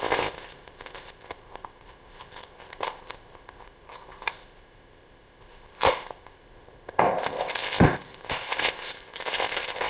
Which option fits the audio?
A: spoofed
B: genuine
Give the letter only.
A